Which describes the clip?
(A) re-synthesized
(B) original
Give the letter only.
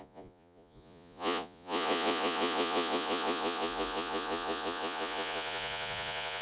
A